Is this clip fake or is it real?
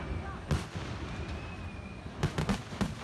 real